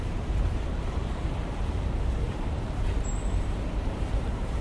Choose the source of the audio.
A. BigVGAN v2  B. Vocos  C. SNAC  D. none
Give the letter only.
A